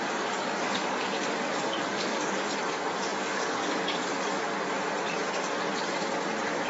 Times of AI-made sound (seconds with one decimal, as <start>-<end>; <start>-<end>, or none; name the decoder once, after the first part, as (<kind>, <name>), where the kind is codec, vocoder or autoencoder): 0.0-4.1 (codec, DAC)